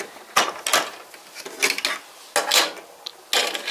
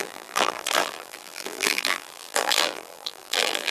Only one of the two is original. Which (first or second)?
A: first